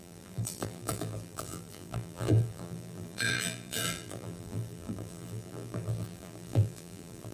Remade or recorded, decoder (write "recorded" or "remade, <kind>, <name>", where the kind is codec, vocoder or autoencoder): remade, vocoder, BigVGAN v2